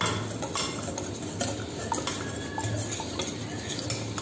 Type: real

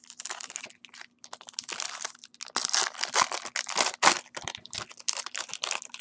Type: real